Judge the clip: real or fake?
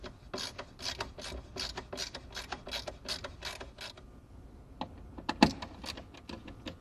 real